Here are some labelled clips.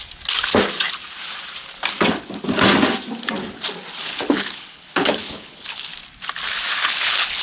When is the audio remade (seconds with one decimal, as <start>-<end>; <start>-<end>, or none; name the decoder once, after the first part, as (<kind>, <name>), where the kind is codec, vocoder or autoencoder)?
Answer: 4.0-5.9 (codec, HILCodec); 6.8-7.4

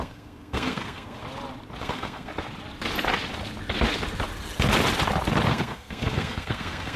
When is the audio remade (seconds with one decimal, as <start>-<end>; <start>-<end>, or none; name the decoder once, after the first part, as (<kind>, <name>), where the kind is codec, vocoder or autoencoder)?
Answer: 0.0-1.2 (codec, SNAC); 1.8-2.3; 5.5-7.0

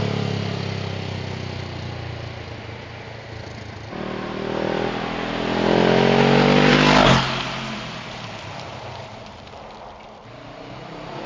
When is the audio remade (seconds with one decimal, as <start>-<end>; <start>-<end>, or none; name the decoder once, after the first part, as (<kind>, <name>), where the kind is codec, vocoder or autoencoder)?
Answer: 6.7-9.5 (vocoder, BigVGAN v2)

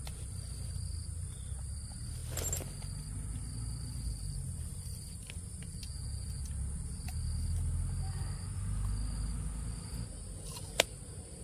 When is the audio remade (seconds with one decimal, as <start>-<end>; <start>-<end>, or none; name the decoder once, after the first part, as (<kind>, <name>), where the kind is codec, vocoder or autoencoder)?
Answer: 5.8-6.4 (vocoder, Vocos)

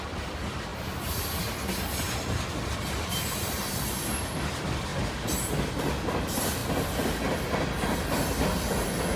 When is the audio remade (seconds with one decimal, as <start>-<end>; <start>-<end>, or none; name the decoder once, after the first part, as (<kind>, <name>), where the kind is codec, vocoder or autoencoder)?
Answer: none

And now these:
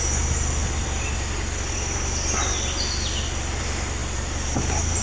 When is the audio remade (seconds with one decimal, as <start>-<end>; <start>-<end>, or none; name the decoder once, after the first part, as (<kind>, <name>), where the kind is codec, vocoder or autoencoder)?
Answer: none